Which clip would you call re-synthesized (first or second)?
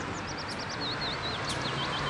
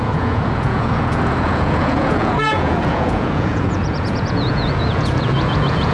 second